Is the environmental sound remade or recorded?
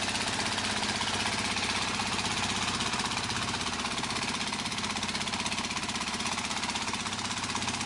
recorded